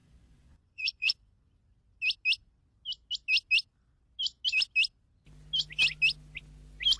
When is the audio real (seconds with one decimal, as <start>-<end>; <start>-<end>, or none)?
1.6-7.0